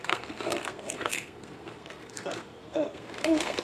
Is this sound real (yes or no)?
no